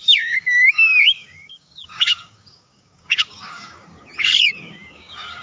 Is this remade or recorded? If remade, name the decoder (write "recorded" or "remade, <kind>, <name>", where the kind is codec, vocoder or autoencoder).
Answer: remade, codec, DAC